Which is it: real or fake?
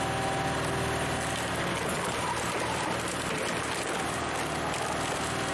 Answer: real